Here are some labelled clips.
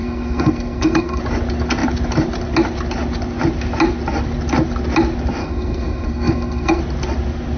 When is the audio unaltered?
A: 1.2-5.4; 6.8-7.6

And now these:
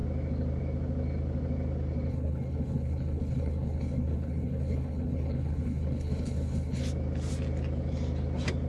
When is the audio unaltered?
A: 0.0-2.1; 6.8-8.7

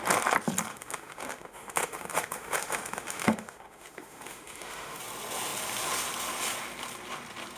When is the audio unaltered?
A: 0.0-0.7; 5.0-7.6